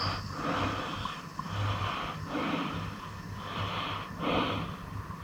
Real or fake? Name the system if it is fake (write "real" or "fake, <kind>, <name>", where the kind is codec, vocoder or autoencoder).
fake, vocoder, BigVGAN v2